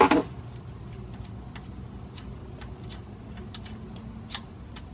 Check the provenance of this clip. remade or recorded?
recorded